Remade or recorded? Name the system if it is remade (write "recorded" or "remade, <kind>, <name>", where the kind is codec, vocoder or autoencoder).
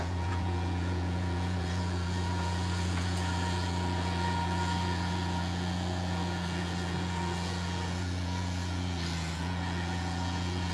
remade, vocoder, Vocos